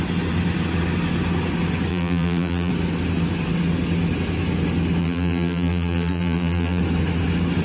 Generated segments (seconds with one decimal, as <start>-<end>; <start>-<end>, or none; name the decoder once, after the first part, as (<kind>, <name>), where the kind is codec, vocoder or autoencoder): 1.9-2.7 (vocoder, BigVGAN v2); 5.0-6.8